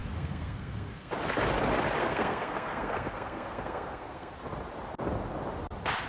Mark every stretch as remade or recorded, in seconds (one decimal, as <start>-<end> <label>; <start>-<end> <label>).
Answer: 0.0-1.1 remade; 1.1-2.0 recorded; 2.0-4.3 remade; 4.3-6.1 recorded